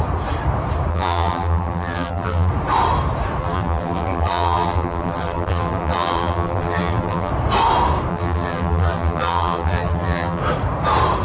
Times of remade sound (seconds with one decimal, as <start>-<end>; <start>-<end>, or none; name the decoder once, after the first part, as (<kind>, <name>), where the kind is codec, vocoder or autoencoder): 0.9-2.5 (vocoder, BigVGAN v2); 3.4-7.3; 8.1-10.4